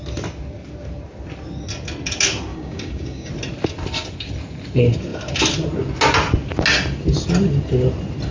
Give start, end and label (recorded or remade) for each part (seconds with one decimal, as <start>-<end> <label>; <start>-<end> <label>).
0.0-2.5 recorded; 2.5-3.3 remade; 3.3-8.3 recorded